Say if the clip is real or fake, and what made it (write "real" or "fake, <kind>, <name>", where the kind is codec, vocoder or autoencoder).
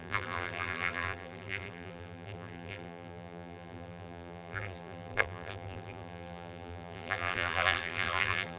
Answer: fake, vocoder, BigVGAN v2